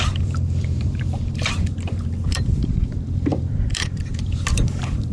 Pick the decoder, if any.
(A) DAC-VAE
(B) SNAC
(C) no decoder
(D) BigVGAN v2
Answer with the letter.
D